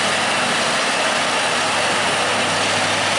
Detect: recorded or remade recorded